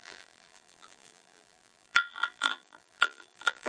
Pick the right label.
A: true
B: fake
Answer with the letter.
B